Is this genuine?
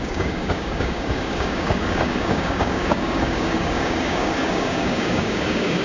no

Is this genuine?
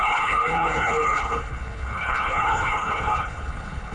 no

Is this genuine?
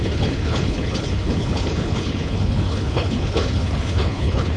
no